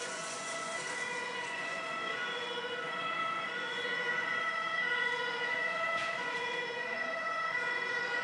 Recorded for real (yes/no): no